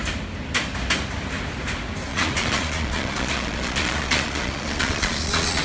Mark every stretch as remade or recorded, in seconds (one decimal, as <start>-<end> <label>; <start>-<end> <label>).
0.0-2.1 recorded; 2.1-5.6 remade